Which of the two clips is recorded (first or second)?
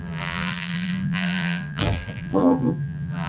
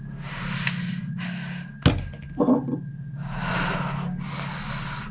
second